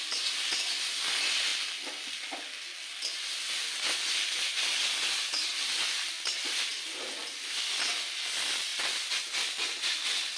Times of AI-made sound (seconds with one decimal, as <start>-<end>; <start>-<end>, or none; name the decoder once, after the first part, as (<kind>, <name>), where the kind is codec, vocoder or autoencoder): 8.7-9.2 (vocoder, BigVGAN v2)